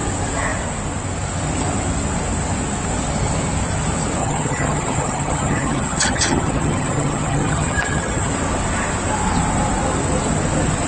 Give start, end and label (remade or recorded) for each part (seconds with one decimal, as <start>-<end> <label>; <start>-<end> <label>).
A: 0.0-4.2 recorded; 4.2-8.3 remade; 8.3-10.9 recorded